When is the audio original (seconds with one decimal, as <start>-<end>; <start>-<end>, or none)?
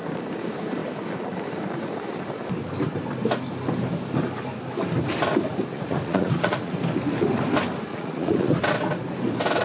0.0-5.7; 6.8-7.9; 8.6-9.6